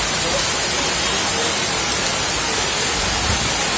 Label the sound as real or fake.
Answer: real